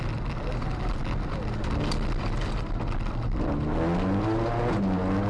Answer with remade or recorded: recorded